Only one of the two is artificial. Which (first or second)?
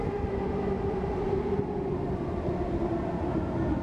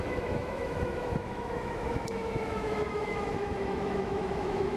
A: second